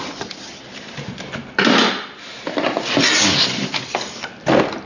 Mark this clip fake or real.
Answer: real